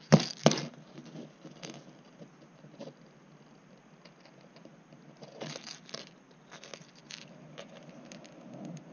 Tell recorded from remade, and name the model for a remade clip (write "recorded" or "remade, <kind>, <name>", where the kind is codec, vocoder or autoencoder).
recorded